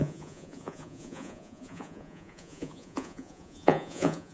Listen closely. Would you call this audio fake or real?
fake